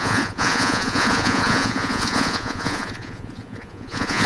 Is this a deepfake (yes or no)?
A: yes